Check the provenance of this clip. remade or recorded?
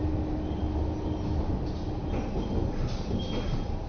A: recorded